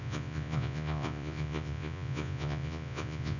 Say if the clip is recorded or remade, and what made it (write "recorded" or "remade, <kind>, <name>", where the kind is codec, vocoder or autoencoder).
remade, vocoder, Vocos